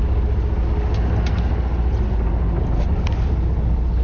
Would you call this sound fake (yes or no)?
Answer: no